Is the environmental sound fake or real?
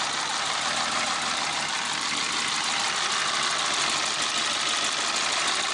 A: real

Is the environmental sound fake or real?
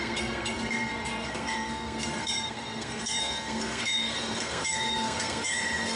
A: fake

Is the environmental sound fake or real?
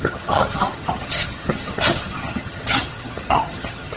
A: fake